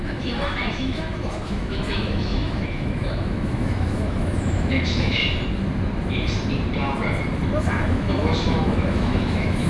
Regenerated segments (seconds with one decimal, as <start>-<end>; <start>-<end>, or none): 0.0-5.2; 7.6-9.7